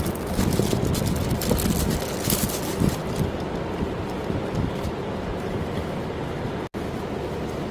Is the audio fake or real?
real